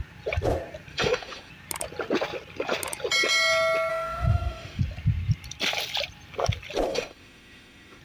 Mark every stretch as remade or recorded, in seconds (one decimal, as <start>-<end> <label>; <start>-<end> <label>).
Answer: 0.0-0.9 recorded; 0.9-1.5 remade; 1.5-3.9 recorded; 3.9-4.8 remade; 4.8-6.9 recorded; 6.9-8.0 remade